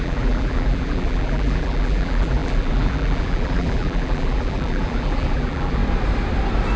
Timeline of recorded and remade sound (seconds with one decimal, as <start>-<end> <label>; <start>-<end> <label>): 0.0-5.8 remade; 5.8-6.8 recorded